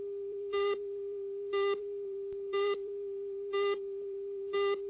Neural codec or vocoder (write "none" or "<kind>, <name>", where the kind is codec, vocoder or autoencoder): vocoder, BigVGAN v2